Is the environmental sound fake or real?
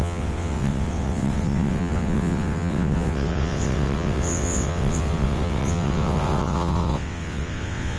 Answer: fake